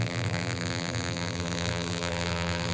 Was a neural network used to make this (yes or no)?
yes